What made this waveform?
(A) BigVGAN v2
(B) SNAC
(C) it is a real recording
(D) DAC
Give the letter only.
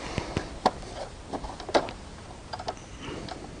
C